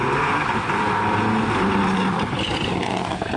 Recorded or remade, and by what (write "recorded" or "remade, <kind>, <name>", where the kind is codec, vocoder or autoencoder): recorded